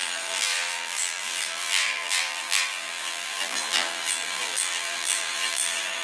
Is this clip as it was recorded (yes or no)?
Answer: no